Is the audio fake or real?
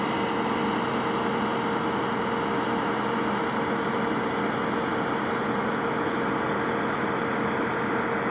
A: real